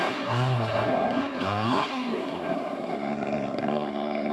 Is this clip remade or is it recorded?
remade